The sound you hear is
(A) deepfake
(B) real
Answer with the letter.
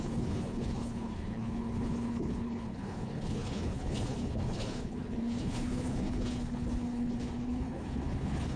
A